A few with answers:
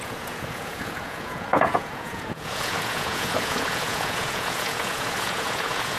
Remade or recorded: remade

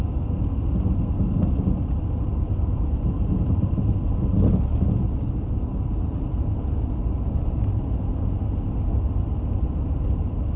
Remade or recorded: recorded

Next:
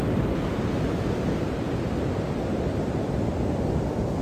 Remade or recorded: recorded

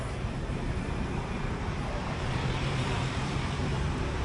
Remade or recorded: remade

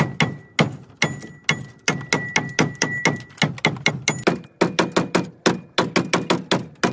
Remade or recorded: recorded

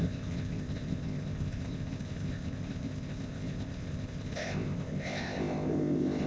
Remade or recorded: remade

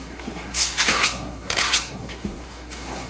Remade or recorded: remade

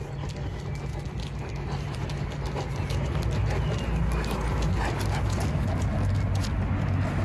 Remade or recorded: recorded